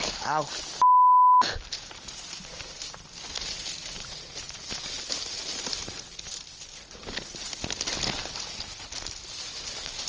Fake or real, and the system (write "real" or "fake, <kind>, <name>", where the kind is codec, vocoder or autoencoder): real